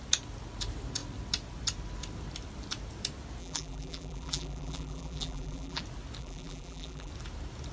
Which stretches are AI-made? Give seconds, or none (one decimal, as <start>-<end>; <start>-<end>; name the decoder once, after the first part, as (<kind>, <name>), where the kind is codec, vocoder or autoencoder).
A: 3.4-5.8 (vocoder, BigVGAN v2); 6.2-7.1